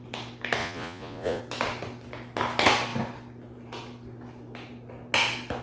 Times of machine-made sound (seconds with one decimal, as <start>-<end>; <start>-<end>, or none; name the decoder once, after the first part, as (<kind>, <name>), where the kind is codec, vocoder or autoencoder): 0.6-1.4 (vocoder, Vocos)